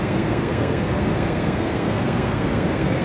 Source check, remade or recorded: remade